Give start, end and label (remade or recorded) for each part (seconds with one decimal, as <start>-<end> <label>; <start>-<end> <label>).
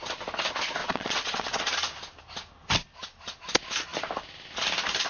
0.0-0.8 recorded; 0.8-1.6 remade; 1.6-5.1 recorded